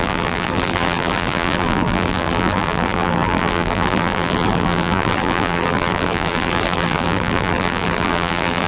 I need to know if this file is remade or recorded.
remade